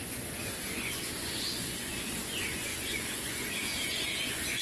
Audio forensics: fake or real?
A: fake